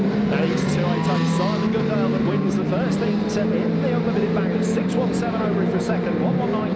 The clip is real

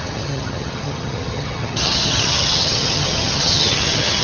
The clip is fake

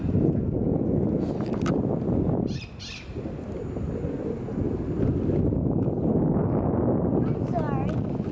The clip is real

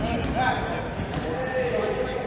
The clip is real